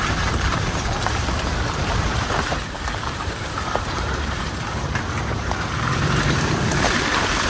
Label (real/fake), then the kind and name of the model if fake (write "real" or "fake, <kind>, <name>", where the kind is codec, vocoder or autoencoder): fake, vocoder, BigVGAN v2